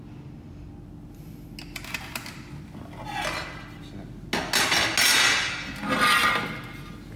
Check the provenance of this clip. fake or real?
real